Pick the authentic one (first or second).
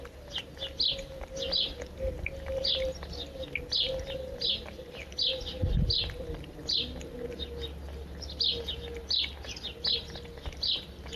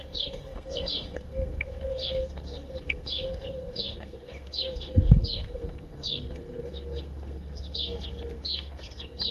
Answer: first